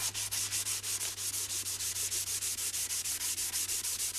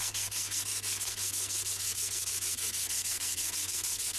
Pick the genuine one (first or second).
first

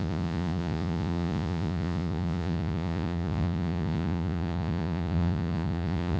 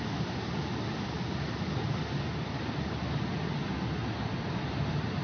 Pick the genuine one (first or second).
second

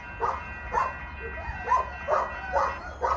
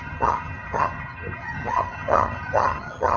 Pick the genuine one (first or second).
first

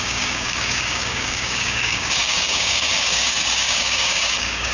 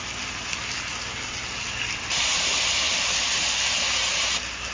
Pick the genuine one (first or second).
second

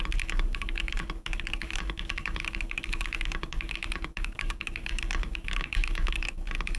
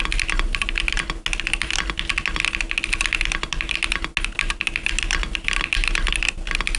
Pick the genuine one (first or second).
second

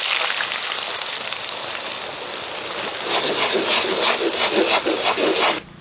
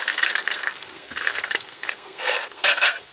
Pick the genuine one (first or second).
first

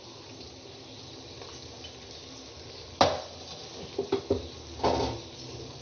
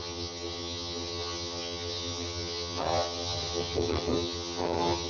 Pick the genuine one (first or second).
first